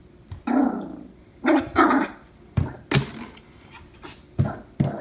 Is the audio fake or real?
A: real